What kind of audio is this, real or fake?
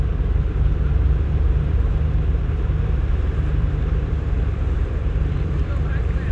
fake